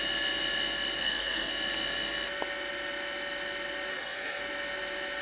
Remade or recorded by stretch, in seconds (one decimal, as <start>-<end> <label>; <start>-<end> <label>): 0.0-1.0 recorded; 1.0-1.5 remade; 1.5-3.9 recorded; 3.9-4.4 remade; 4.4-5.2 recorded